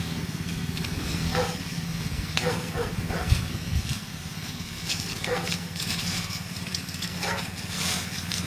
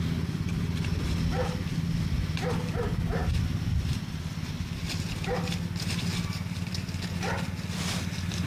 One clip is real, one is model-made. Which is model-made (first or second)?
first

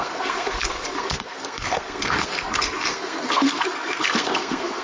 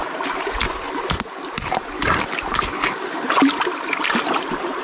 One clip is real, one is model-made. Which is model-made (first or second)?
first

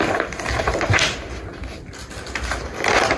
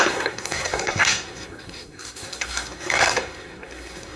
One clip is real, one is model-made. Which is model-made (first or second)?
second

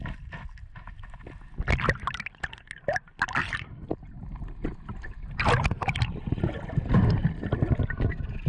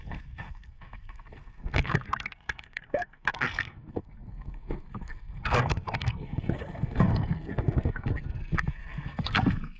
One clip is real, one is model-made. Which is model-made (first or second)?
second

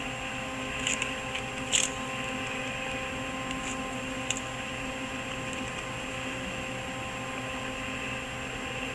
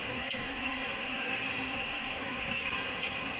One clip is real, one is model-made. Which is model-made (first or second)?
second